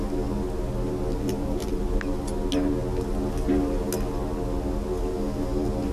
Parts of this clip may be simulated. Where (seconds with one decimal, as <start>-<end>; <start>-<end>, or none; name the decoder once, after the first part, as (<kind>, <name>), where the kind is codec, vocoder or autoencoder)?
1.1-1.8 (vocoder, BigVGAN v2)